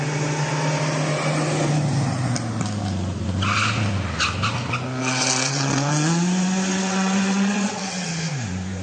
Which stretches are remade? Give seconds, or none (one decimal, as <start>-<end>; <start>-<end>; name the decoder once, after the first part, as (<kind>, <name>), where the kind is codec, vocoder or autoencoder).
5.0-5.9 (vocoder, WaveNeXt); 6.7-8.1